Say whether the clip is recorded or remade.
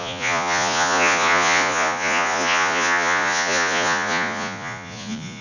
remade